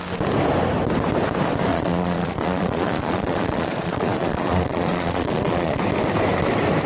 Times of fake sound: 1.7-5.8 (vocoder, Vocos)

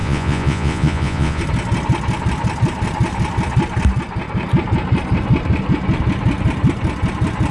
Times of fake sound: 0.0-1.4 (vocoder, Vocos)

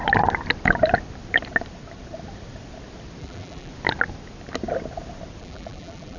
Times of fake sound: 3.2-3.7 (vocoder, BigVGAN v2); 5.4-6.2